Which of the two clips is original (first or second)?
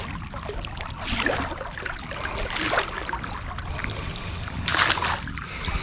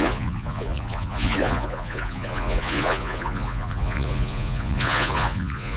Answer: first